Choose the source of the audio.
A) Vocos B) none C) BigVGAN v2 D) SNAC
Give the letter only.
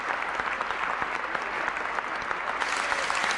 B